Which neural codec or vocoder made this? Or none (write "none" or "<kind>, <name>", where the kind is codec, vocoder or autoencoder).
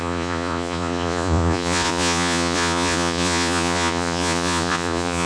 vocoder, Vocos